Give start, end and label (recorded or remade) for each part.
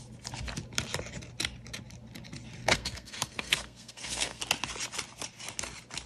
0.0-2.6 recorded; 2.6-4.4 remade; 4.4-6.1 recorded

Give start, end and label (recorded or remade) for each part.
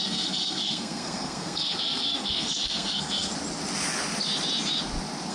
0.0-3.3 remade; 3.3-5.3 recorded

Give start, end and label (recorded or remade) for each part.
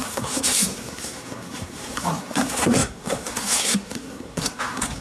0.0-5.0 remade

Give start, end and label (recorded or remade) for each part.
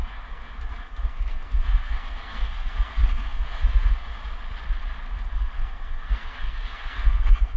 0.0-4.2 remade; 4.2-5.3 recorded; 5.3-7.6 remade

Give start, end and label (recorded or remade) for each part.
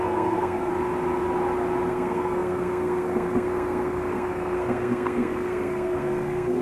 0.0-0.7 remade; 0.7-1.9 recorded; 1.9-6.6 remade